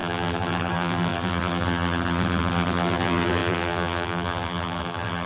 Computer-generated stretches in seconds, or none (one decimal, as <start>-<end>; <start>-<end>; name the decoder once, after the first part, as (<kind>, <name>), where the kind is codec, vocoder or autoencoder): 0.0-5.3 (vocoder, BigVGAN v2)